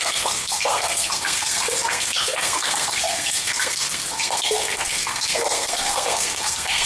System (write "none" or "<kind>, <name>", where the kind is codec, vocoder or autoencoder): codec, SNAC